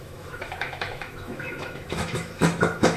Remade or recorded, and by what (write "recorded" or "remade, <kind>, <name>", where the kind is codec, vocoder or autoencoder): remade, autoencoder, DAC-VAE